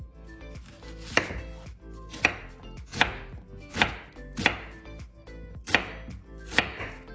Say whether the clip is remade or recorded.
recorded